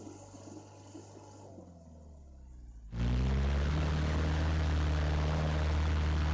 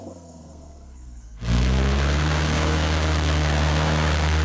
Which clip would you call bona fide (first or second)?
first